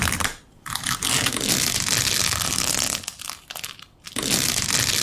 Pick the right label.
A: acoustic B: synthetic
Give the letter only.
A